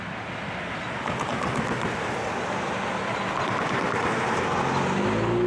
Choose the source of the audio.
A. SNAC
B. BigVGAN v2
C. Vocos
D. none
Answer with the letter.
D